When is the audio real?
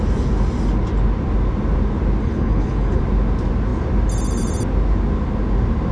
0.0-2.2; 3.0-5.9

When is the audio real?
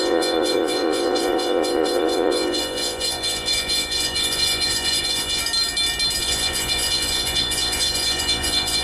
5.4-6.2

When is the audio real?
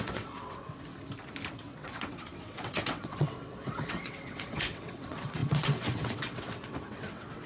0.9-1.5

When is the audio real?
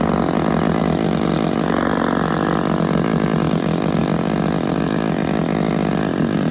0.0-6.5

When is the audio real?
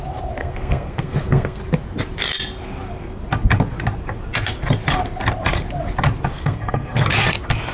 0.0-0.4; 1.6-6.3; 7.1-7.7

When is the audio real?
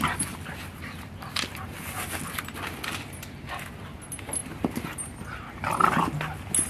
0.0-6.7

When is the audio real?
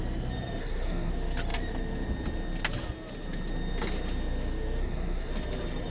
0.0-0.6; 1.1-4.8; 5.3-5.9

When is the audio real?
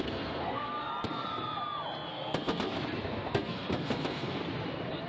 0.9-2.1; 2.7-3.3; 4.4-5.1